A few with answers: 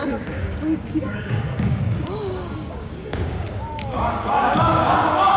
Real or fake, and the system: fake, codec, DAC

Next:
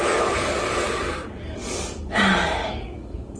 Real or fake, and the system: fake, codec, DAC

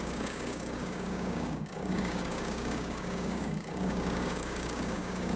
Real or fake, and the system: fake, codec, DAC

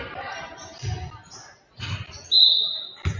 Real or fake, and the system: real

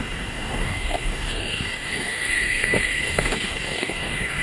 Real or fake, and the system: fake, codec, DAC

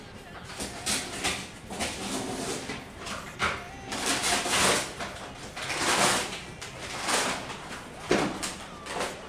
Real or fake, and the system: real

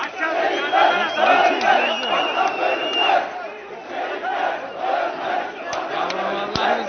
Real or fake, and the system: real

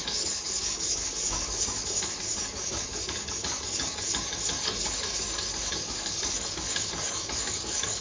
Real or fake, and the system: fake, codec, DAC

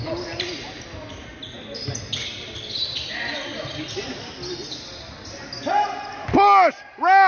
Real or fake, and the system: real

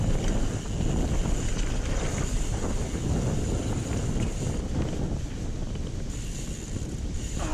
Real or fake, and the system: real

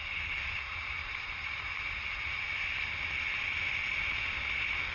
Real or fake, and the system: real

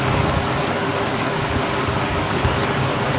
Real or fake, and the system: fake, codec, DAC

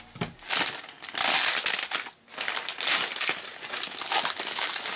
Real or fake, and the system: real